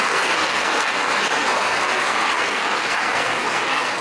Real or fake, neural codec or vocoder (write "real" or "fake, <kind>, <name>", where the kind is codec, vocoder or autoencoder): fake, codec, SNAC